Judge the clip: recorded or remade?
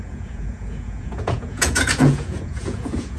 remade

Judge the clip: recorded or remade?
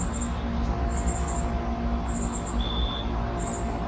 recorded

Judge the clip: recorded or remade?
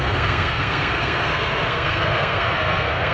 remade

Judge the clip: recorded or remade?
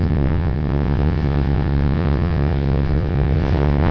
remade